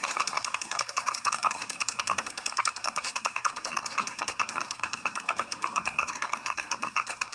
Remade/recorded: remade